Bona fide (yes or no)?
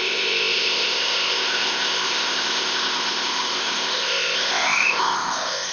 no